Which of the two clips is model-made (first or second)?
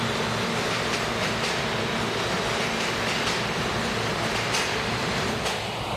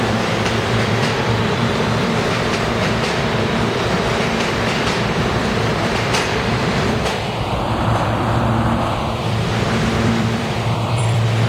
second